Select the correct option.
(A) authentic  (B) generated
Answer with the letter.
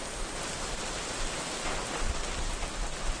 A